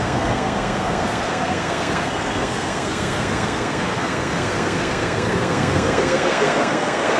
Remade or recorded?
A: remade